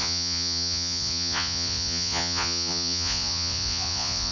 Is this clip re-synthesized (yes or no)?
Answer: yes